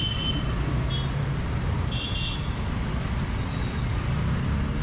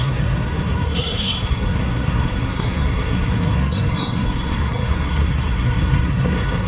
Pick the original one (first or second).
first